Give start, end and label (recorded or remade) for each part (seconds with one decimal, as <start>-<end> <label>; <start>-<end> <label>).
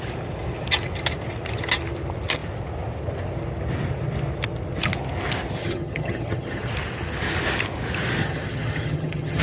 0.0-5.6 recorded; 5.6-6.7 remade; 6.7-8.2 recorded; 8.2-9.4 remade